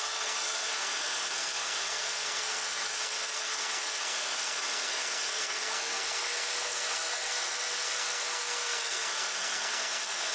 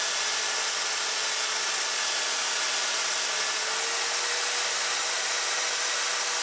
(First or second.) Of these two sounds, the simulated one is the first